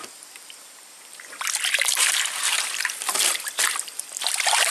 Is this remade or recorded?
remade